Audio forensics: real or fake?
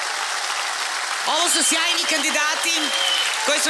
real